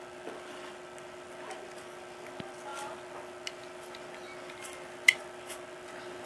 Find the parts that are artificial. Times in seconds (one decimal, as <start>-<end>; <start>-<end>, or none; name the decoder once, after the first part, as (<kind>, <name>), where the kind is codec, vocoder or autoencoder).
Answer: none